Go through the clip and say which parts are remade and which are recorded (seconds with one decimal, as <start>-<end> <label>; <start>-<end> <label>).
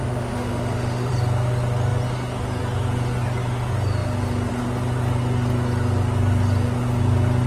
0.0-1.1 remade; 1.1-7.5 recorded